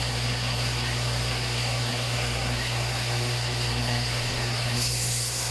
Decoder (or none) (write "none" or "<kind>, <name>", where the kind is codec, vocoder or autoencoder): codec, SNAC